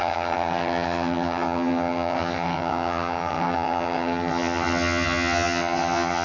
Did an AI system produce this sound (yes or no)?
yes